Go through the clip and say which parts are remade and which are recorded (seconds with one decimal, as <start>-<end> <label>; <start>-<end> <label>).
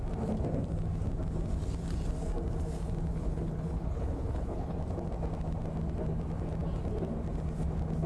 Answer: 0.0-3.1 recorded; 3.1-4.8 remade; 4.8-8.1 recorded